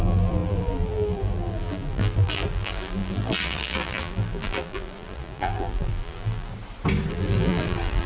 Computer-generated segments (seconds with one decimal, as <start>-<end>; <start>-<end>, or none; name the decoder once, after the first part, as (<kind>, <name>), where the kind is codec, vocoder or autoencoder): 0.0-6.5 (vocoder, BigVGAN v2); 7.1-8.1